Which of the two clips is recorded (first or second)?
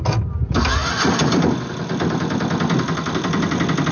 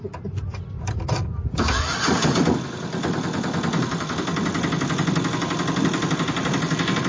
first